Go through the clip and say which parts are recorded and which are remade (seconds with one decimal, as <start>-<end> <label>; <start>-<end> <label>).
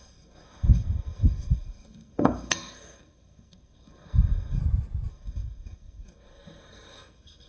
0.0-4.6 remade; 4.6-5.1 recorded; 5.1-7.5 remade